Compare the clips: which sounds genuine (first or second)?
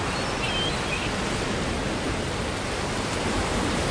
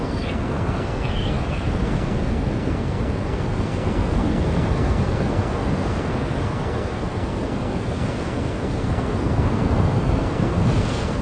first